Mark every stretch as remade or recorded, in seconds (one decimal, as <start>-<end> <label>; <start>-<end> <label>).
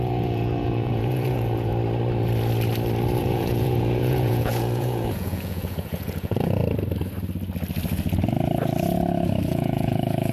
0.0-1.7 remade; 1.7-3.2 recorded; 3.2-6.6 remade; 6.6-9.5 recorded; 9.5-10.3 remade